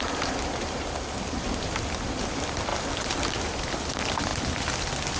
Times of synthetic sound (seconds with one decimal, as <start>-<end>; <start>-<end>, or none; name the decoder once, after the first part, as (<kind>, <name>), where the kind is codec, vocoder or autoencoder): 0.0-2.7 (vocoder, BigVGAN v2); 3.3-4.3